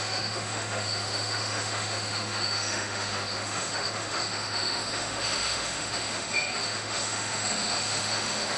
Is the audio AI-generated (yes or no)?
yes